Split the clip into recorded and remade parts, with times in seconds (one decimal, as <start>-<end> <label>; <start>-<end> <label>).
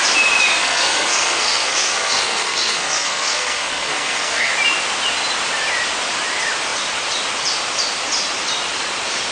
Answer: 0.0-0.6 recorded; 0.6-4.5 remade; 4.5-9.3 recorded